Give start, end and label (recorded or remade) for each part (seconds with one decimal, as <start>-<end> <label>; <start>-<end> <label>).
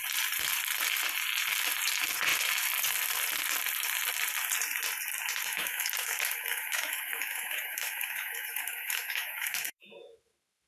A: 0.0-5.5 recorded; 5.5-10.7 remade